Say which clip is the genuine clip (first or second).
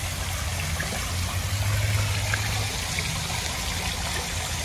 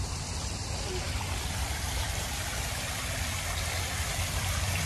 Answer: first